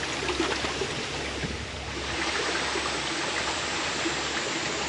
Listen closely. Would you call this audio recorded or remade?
recorded